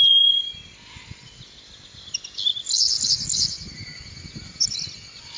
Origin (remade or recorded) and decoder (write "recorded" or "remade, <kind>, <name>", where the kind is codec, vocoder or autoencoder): recorded